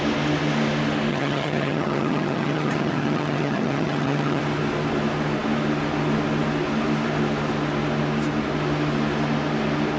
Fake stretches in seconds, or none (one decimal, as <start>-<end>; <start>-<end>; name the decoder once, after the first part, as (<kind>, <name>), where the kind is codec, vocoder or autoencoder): 1.1-4.4 (vocoder, HiFi-GAN)